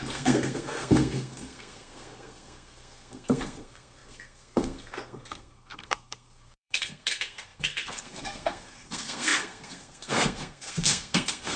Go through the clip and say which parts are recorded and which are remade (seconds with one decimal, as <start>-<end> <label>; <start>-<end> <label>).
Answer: 0.0-11.6 remade